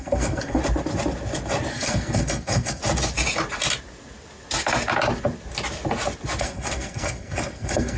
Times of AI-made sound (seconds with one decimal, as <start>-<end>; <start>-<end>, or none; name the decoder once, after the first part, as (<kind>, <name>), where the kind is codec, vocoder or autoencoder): 0.0-0.6 (codec, SNAC); 1.7-2.8; 6.4-8.0